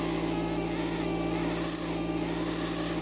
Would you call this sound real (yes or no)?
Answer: yes